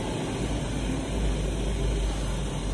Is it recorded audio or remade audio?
recorded